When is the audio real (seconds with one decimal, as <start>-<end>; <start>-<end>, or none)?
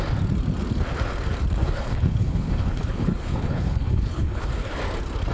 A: 0.0-1.6; 4.8-5.3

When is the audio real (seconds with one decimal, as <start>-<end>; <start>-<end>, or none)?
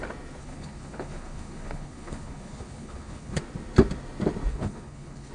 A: 0.0-0.4; 3.4-4.5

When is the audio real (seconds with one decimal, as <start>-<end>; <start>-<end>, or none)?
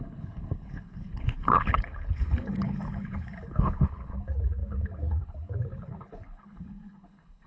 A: none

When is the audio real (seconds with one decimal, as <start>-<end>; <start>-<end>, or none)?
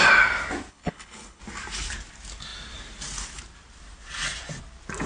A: 0.0-0.7; 1.4-5.1